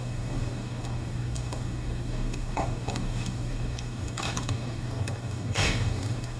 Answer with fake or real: fake